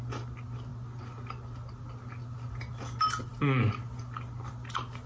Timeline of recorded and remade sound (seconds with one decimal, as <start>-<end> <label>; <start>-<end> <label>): 0.0-5.1 recorded

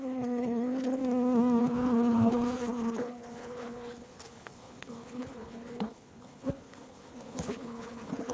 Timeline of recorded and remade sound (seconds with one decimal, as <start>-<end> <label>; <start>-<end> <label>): 0.0-1.0 remade; 1.0-1.6 recorded; 1.6-8.3 remade